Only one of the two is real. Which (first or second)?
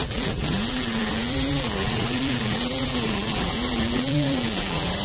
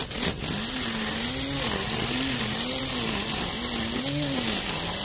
second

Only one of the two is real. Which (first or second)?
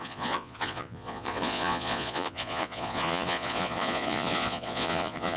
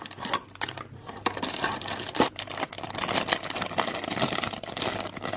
second